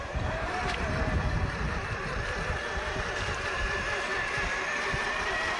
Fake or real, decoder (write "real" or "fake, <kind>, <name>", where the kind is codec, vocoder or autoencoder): fake, vocoder, BigVGAN v2